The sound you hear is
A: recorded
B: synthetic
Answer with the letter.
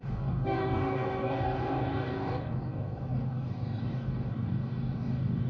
B